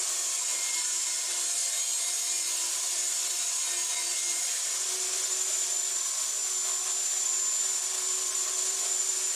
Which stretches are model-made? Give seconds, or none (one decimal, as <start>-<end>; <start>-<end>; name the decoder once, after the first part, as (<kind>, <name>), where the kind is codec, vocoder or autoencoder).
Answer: 0.0-6.4 (vocoder, BigVGAN v2); 7.6-9.4